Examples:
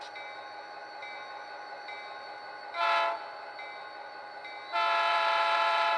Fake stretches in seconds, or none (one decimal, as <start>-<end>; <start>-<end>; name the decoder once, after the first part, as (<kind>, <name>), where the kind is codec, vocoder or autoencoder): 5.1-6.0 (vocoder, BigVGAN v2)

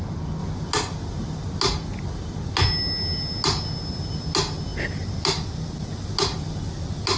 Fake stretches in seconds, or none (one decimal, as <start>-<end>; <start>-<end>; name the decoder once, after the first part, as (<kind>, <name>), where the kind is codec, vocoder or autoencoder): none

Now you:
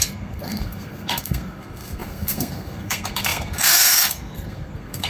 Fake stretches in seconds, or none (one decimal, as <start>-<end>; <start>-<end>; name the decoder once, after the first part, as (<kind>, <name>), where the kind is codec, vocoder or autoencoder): 0.0-5.1 (codec, SNAC)